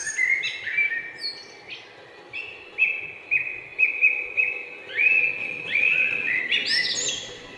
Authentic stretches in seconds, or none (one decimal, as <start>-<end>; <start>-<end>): 0.0-5.4; 6.4-7.6

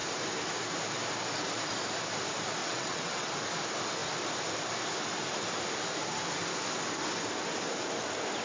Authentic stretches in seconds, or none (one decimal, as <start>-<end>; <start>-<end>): 0.0-2.6; 3.3-8.4

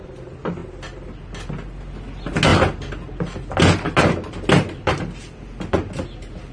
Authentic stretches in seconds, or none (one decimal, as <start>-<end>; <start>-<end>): 0.0-6.5

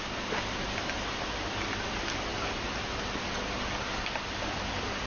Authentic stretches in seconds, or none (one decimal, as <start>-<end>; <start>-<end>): 0.0-5.1

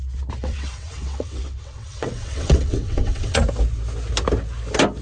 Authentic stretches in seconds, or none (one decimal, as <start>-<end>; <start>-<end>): 0.0-0.4; 3.4-5.0

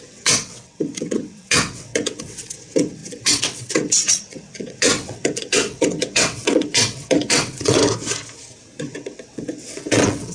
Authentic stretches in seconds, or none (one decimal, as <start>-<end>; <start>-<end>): 7.8-8.8